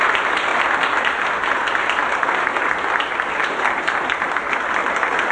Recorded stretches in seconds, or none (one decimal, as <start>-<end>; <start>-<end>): 0.0-0.5; 1.3-5.3